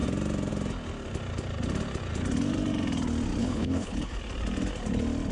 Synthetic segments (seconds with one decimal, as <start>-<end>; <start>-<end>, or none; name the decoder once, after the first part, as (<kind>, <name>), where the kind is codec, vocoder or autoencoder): 3.4-4.2 (codec, HILCodec)